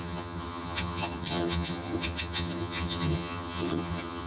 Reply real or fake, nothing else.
fake